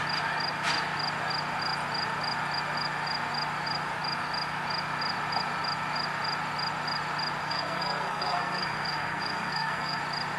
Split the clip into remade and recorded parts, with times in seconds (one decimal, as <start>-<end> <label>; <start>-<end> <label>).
0.0-7.4 recorded; 7.4-10.0 remade; 10.0-10.4 recorded

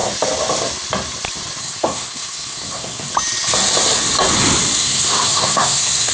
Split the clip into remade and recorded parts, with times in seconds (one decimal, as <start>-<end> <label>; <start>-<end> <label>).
0.0-1.6 recorded; 1.6-3.1 remade; 3.1-4.8 recorded; 4.8-6.1 remade

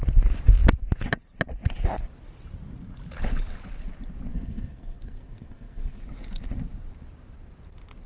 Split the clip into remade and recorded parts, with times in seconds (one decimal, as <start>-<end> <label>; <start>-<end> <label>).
0.0-4.3 recorded; 4.3-6.0 remade; 6.0-8.1 recorded

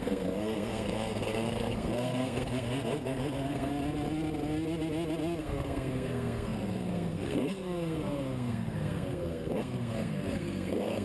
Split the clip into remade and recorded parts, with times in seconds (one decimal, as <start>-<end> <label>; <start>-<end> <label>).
0.0-3.7 remade; 3.7-5.4 recorded; 5.4-11.0 remade

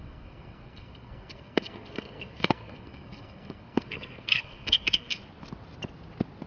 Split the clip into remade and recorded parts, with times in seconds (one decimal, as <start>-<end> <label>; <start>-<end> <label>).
0.0-5.2 remade; 5.2-6.5 recorded

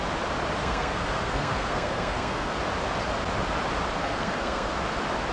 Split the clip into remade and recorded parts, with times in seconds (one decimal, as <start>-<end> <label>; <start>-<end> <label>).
0.0-0.6 recorded; 0.6-2.5 remade; 2.5-4.0 recorded; 4.0-4.7 remade; 4.7-5.3 recorded